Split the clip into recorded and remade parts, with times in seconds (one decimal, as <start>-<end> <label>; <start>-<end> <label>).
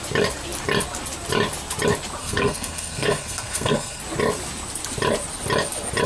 0.0-2.2 recorded; 2.2-4.0 remade; 4.0-6.1 recorded